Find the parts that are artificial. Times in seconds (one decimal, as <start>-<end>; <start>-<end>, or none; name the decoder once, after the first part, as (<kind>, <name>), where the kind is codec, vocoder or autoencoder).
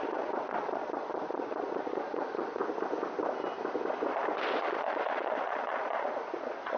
0.0-2.6 (vocoder, Vocos); 4.6-6.8